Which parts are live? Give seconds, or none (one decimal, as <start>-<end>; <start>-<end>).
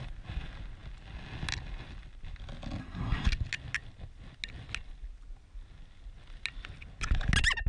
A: 0.0-2.8; 3.3-7.7